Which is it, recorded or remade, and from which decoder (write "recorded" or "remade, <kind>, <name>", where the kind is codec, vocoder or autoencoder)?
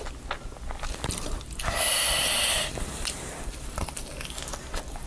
recorded